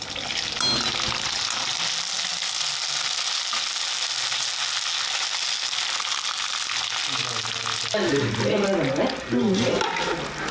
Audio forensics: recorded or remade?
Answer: recorded